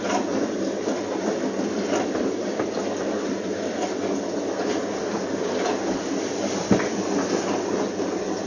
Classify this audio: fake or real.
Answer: real